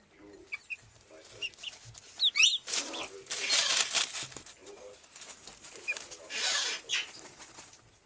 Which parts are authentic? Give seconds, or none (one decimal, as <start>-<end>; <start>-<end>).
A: 0.0-8.1